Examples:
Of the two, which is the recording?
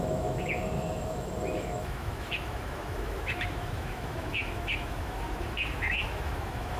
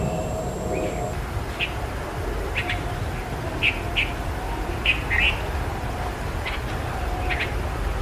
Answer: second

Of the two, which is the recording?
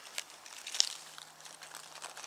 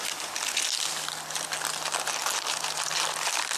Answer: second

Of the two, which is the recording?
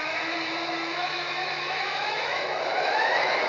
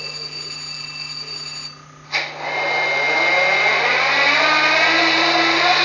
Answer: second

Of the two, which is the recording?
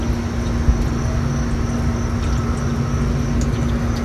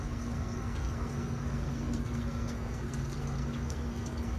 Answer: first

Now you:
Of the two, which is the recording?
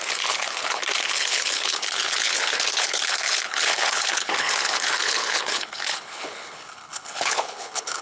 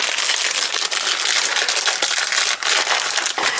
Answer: second